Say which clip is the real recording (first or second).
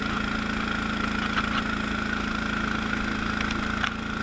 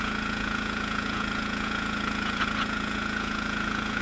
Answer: first